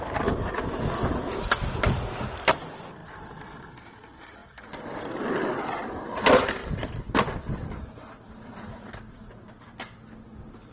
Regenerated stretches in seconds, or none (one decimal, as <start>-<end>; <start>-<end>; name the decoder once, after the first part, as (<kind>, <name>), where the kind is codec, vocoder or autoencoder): none